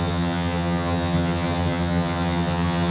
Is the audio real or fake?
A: fake